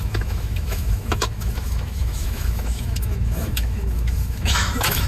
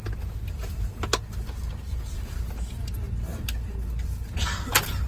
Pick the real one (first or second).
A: second